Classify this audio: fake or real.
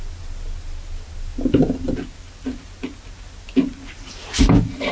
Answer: real